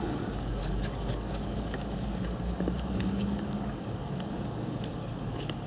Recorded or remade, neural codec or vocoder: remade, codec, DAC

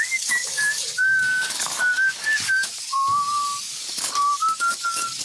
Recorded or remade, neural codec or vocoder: remade, codec, DAC